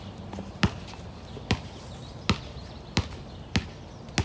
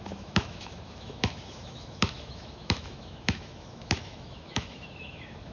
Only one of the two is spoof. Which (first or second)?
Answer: second